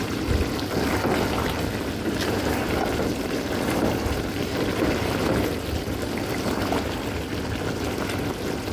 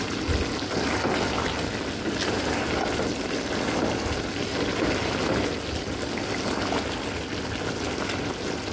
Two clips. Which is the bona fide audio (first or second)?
second